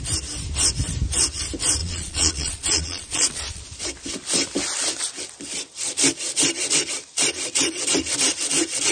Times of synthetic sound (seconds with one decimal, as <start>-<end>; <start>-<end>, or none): 1.8-3.6